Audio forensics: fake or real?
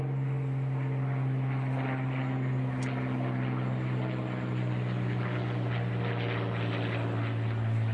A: real